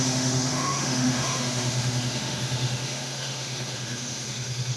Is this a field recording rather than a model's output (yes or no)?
no